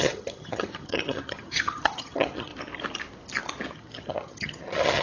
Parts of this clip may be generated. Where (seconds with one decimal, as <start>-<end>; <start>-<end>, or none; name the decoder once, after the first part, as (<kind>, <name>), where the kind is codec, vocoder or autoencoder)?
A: 0.0-2.5 (vocoder, HiFi-GAN); 3.7-5.0